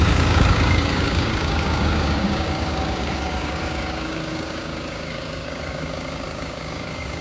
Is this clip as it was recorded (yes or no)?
no